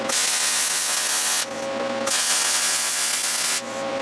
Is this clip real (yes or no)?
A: yes